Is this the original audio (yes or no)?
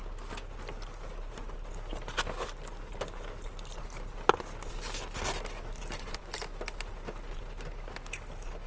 yes